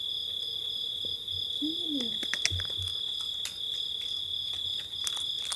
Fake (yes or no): no